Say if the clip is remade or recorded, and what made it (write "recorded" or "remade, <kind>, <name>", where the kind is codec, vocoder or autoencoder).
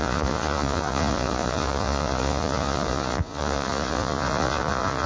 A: remade, vocoder, Vocos